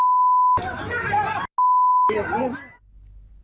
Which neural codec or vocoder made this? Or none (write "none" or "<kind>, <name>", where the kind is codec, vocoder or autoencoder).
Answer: none